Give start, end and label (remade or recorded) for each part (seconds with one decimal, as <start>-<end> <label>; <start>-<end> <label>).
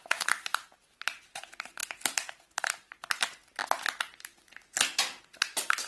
0.0-5.9 recorded